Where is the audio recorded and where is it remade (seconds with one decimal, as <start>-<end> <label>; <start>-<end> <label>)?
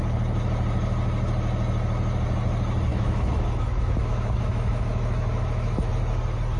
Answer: 0.0-2.9 recorded; 2.9-5.9 remade; 5.9-6.6 recorded